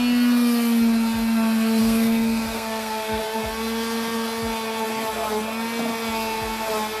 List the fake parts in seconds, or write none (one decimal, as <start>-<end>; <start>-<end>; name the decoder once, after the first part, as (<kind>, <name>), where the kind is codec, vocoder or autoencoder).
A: 1.8-3.2 (codec, SNAC)